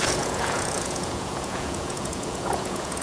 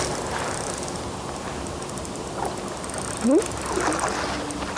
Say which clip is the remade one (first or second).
first